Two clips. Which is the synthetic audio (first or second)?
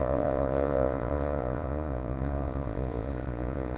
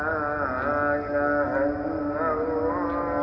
first